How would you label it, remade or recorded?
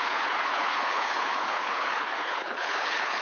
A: remade